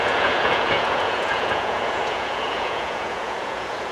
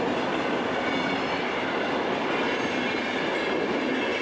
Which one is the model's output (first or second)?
first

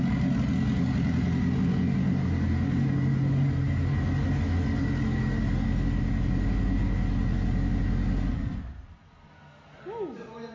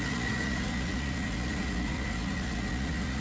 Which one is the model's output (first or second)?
second